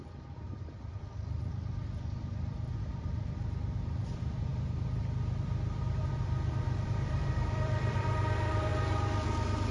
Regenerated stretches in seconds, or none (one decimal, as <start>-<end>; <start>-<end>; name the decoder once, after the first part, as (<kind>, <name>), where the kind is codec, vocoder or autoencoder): 0.0-8.7 (vocoder, BigVGAN v2)

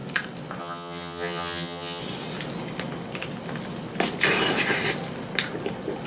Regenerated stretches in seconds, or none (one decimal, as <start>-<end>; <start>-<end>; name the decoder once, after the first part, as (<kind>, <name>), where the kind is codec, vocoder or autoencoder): 0.6-2.0 (vocoder, HiFi-GAN)

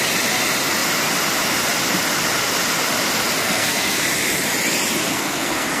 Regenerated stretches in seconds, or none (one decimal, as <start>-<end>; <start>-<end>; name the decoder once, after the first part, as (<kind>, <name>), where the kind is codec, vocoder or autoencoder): 3.4-4.0 (codec, SNAC); 5.0-5.8

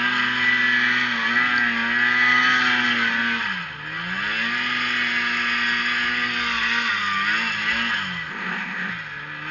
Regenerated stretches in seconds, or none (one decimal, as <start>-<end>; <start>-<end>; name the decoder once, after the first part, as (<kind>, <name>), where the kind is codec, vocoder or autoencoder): 8.3-8.9 (codec, ZipCodec)